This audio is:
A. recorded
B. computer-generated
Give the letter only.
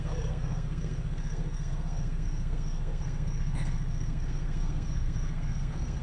B